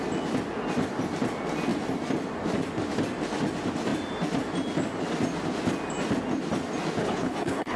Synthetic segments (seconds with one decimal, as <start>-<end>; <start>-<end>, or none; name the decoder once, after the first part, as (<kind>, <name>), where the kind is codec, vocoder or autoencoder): 7.0-7.8 (codec, HILCodec)

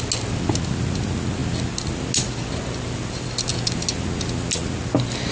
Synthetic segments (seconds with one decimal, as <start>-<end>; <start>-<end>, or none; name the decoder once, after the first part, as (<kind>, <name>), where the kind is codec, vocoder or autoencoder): none

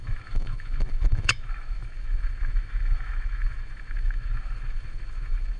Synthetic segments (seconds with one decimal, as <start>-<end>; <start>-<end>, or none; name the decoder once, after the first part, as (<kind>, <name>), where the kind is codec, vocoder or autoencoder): 0.0-5.6 (autoencoder, DAC-VAE)

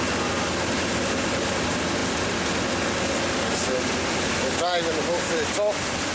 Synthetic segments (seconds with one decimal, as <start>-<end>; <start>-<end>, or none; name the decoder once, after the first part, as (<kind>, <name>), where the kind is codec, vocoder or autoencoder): none

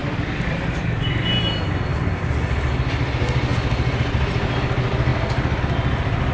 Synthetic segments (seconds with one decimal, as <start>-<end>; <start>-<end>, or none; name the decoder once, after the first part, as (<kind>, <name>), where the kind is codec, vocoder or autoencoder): 0.0-0.6 (vocoder, BigVGAN v2)